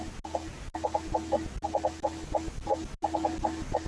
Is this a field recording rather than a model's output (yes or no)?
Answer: yes